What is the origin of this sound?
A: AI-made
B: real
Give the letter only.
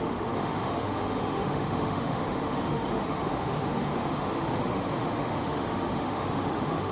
A